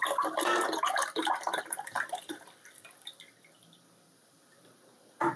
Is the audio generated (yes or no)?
yes